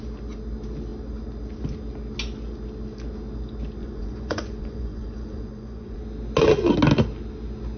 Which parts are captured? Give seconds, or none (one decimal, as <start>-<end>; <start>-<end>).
0.0-3.8; 6.0-7.8